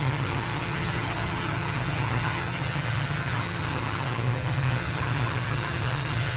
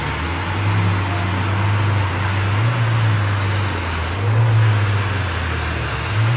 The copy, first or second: first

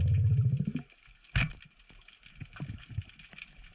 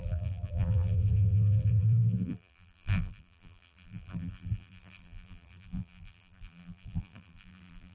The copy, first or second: second